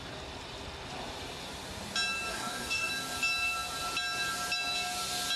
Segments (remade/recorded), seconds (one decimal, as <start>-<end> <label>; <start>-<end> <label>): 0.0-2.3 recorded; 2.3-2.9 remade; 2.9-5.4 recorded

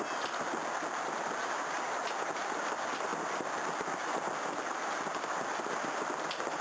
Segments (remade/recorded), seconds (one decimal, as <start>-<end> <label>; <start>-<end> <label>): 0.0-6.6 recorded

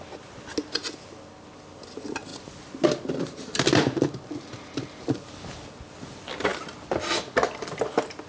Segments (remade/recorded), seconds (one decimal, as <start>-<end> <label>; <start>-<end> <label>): 0.0-8.3 recorded

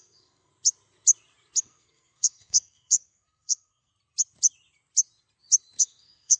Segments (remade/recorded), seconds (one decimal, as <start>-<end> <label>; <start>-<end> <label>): 0.0-0.5 remade; 0.5-1.6 recorded; 1.6-3.9 remade; 3.9-5.8 recorded; 5.8-6.4 remade

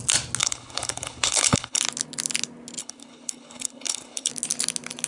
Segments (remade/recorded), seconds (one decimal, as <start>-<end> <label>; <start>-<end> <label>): 0.0-0.4 recorded; 0.4-1.8 remade; 1.8-2.8 recorded; 2.8-4.3 remade; 4.3-5.1 recorded